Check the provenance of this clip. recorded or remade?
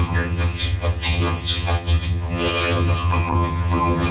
remade